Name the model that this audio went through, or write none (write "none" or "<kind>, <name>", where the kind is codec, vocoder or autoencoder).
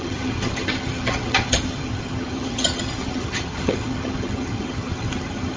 vocoder, HiFi-GAN